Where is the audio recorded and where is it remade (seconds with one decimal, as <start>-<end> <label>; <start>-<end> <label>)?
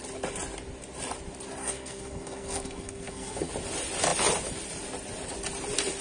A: 0.0-1.6 recorded; 1.6-3.5 remade; 3.5-6.0 recorded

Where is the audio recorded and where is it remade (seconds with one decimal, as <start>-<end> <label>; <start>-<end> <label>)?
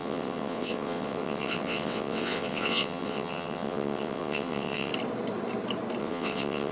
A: 0.0-4.9 remade; 4.9-6.0 recorded; 6.0-6.7 remade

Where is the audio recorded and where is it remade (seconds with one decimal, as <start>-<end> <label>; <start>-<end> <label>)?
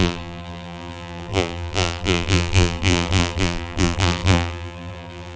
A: 0.0-5.4 remade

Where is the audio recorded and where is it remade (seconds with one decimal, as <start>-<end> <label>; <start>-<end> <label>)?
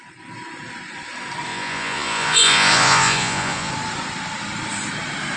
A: 0.0-1.5 recorded; 1.5-3.7 remade; 3.7-5.4 recorded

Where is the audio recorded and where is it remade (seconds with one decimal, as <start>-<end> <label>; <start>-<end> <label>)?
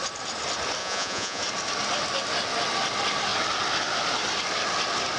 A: 0.0-0.8 recorded; 0.8-1.4 remade; 1.4-5.2 recorded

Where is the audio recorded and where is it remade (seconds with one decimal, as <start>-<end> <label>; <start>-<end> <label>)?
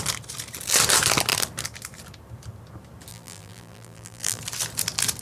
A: 0.0-3.1 recorded; 3.1-4.4 remade; 4.4-5.2 recorded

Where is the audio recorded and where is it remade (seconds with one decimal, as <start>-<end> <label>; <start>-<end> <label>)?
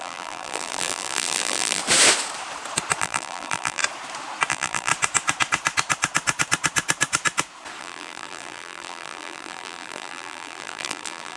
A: 0.0-1.8 remade; 1.8-3.0 recorded; 3.0-3.8 remade; 3.8-4.5 recorded; 4.5-4.9 remade; 4.9-7.8 recorded; 7.8-11.4 remade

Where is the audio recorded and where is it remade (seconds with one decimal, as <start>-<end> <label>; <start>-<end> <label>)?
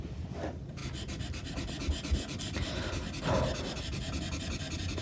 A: 0.0-5.0 recorded